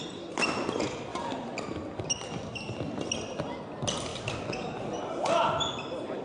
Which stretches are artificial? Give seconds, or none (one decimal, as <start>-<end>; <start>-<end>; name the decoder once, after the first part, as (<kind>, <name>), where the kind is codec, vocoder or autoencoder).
none